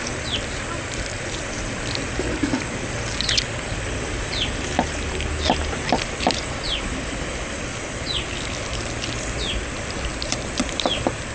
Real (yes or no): yes